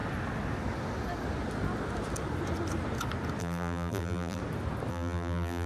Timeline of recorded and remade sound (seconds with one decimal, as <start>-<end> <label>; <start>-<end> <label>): 0.0-3.4 recorded; 3.4-4.4 remade; 4.4-4.9 recorded; 4.9-5.7 remade